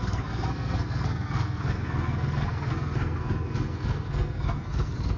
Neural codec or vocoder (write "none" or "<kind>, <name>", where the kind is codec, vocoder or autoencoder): codec, SNAC